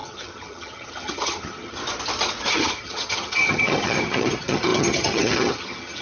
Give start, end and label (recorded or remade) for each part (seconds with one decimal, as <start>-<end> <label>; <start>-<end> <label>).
0.0-1.8 remade; 1.8-2.5 recorded; 2.5-6.0 remade